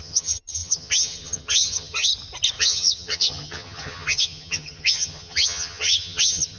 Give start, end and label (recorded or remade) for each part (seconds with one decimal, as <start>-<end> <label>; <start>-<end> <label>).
0.0-2.1 remade; 2.1-2.6 recorded; 2.6-6.6 remade